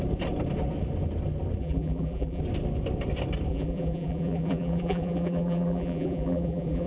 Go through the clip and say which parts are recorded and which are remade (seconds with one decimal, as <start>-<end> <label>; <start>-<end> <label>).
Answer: 0.0-1.6 recorded; 1.6-2.4 remade; 2.4-3.5 recorded; 3.5-6.9 remade